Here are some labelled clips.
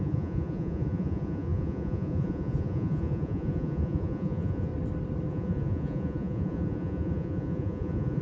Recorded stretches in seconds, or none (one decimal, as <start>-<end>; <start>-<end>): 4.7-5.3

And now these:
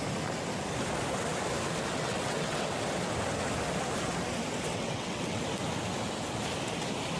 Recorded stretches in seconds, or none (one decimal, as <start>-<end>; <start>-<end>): 0.0-1.9; 2.7-4.7; 5.4-7.2

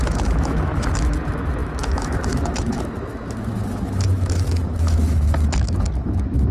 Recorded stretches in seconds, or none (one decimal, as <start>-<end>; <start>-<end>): none